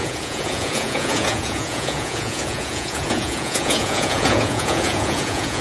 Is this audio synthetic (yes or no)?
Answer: yes